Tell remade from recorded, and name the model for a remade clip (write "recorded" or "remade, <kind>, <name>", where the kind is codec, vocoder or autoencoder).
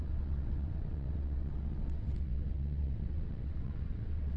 remade, vocoder, WaveNeXt